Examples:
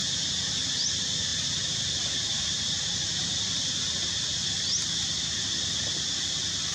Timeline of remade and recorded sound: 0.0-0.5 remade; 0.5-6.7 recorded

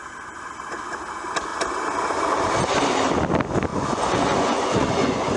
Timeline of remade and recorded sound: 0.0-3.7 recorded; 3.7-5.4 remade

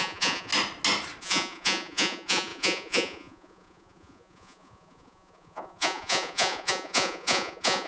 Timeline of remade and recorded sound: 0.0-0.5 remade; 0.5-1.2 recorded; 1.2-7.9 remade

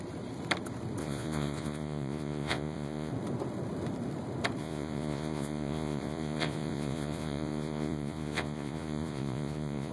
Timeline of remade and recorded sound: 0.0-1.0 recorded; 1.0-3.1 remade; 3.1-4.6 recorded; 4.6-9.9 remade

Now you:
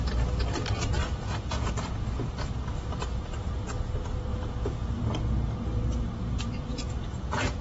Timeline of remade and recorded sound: 0.0-1.0 recorded; 1.0-1.7 remade; 1.7-4.3 recorded; 4.3-5.0 remade; 5.0-6.7 recorded; 6.7-7.6 remade

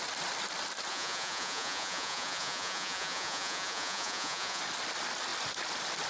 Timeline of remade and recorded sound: 0.0-0.9 recorded; 0.9-4.6 remade; 4.6-6.1 recorded